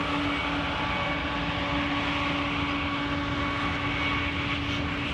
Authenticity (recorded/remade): recorded